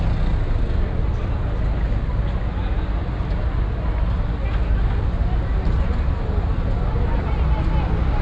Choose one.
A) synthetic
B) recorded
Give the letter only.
B